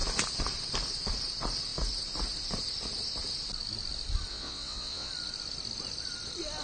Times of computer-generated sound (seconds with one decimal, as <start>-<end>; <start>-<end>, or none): 4.3-5.1